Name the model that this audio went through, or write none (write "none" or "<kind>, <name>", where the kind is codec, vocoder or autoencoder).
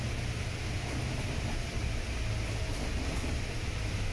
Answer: none